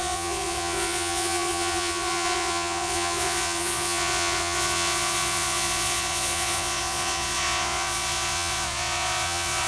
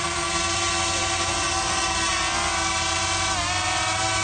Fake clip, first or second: first